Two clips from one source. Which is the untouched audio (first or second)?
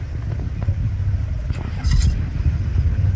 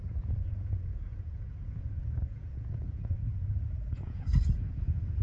first